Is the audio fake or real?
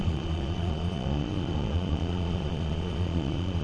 fake